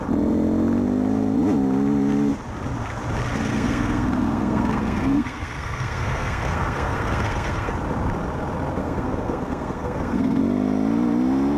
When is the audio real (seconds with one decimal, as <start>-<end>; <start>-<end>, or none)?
0.0-3.5; 7.7-8.8; 10.4-11.6